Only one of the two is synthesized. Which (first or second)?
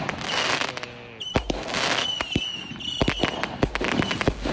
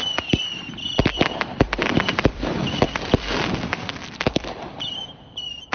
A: second